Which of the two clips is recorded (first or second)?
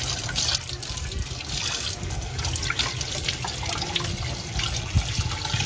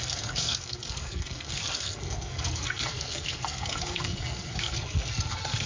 first